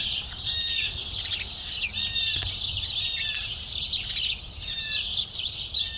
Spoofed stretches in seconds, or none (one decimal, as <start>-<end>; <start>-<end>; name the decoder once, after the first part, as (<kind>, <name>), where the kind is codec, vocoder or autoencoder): none